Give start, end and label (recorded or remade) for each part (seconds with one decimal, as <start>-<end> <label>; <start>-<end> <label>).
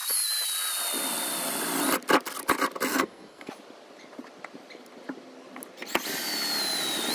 0.0-2.9 recorded; 2.9-3.5 remade; 3.5-7.1 recorded